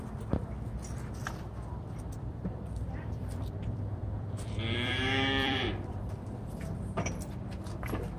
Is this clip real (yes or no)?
no